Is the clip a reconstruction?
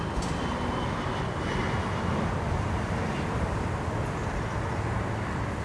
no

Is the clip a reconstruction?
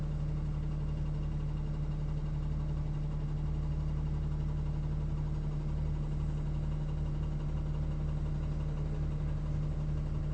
no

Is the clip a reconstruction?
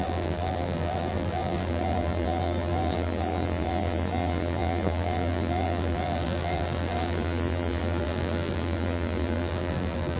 yes